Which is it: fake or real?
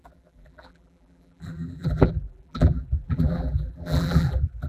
fake